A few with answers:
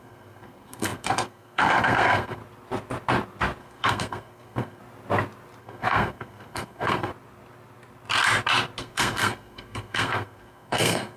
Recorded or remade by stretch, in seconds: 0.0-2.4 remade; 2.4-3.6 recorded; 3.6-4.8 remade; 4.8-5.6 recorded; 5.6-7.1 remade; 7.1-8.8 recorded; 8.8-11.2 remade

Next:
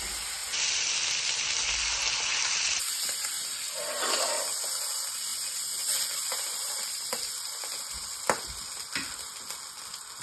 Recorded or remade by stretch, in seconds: 0.0-10.2 recorded

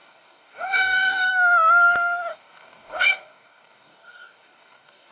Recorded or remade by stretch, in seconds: 0.0-1.3 remade; 1.3-2.3 recorded; 2.3-5.1 remade

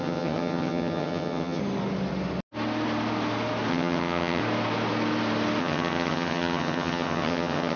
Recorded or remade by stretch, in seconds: 0.0-1.6 remade; 1.6-3.7 recorded; 3.7-4.4 remade; 4.4-5.6 recorded; 5.6-7.8 remade

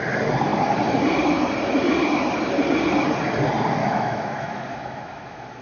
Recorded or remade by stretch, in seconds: 0.0-3.8 recorded; 3.8-5.6 remade

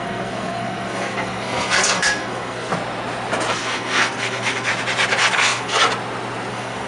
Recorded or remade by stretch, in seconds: 0.0-2.7 remade; 2.7-3.5 recorded; 3.5-4.7 remade; 4.7-5.2 recorded; 5.2-5.8 remade; 5.8-6.5 recorded; 6.5-6.9 remade

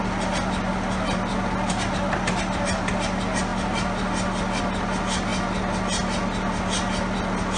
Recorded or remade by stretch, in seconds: 0.0-7.6 recorded

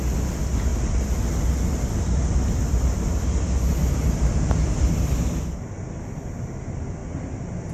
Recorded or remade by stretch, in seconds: 0.0-7.7 recorded